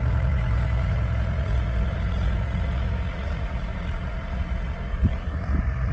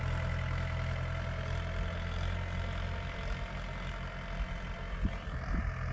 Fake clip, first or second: first